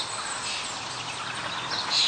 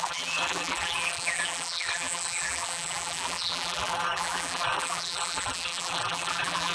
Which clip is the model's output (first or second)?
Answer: second